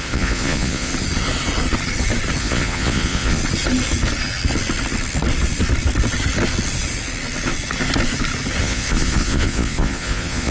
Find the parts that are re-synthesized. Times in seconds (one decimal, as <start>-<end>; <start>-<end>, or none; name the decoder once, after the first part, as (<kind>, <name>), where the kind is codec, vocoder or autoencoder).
0.0-0.9 (vocoder, Vocos); 2.4-3.4; 8.6-10.5